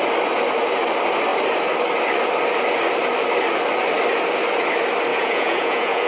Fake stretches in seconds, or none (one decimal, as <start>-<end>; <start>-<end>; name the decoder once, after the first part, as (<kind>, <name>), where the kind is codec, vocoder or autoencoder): 5.1-6.1 (vocoder, Vocos)